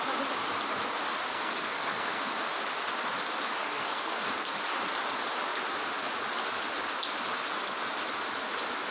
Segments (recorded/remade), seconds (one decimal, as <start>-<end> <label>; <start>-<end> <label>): 0.0-1.3 recorded; 1.3-2.3 remade; 2.3-3.6 recorded; 3.6-4.2 remade; 4.2-8.9 recorded